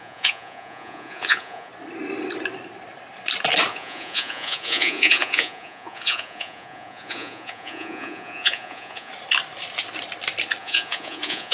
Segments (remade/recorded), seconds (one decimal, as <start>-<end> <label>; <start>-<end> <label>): 0.0-1.7 remade; 1.7-3.7 recorded; 3.7-9.1 remade; 9.1-10.6 recorded; 10.6-11.5 remade